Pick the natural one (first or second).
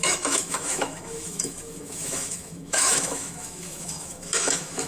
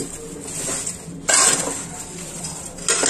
second